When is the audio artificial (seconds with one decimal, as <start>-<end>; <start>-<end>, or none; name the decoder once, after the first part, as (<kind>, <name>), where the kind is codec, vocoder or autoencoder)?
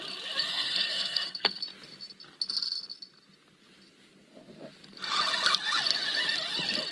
0.5-1.6 (codec, SNAC)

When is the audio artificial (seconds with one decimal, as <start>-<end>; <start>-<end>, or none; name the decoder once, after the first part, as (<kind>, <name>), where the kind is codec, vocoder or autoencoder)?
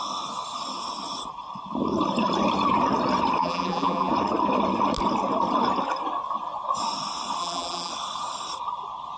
3.4-4.1 (vocoder, BigVGAN v2); 7.4-7.9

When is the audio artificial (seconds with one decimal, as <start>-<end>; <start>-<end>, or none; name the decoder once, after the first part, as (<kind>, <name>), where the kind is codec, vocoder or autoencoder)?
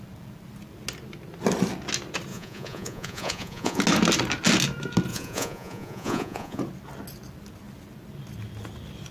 2.3-3.8 (vocoder, Vocos); 5.1-6.6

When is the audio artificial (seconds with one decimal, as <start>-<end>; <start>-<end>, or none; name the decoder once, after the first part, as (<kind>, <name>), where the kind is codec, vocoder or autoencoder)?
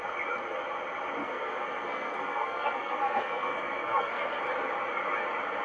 1.2-4.4 (codec, SNAC)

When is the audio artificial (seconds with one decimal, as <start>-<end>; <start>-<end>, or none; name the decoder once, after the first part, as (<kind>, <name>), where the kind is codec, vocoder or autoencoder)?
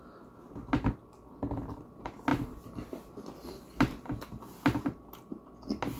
none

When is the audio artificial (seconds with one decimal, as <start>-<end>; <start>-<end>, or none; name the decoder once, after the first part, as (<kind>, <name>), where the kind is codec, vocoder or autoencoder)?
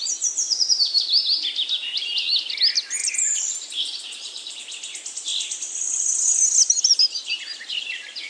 3.0-4.6 (vocoder, BigVGAN v2)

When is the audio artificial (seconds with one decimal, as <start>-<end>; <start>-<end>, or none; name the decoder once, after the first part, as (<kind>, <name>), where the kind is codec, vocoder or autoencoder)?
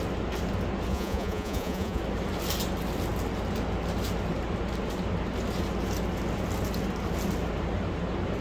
0.9-2.0 (vocoder, Vocos)